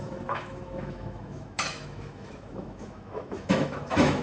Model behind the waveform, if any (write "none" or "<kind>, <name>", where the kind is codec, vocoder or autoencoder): autoencoder, DAC-VAE